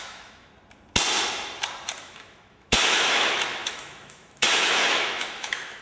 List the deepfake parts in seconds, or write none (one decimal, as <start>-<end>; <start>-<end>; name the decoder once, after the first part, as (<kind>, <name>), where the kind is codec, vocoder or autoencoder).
0.0-0.5 (autoencoder, DAC-VAE); 2.0-5.8